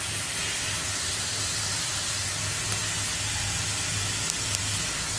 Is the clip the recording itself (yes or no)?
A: yes